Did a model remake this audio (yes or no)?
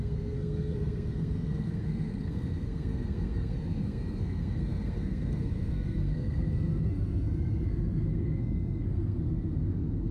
yes